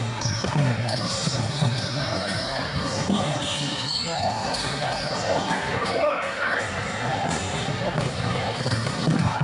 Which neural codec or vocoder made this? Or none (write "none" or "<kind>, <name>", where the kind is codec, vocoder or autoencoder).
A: codec, SNAC